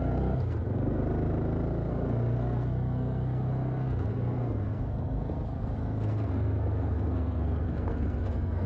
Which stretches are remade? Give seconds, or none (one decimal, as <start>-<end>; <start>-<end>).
0.0-1.0; 1.9-8.7